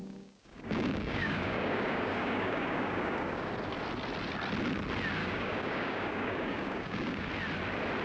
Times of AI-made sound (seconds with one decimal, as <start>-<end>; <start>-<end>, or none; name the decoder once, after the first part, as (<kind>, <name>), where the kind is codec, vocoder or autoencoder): 0.0-3.5 (codec, DAC); 5.2-7.3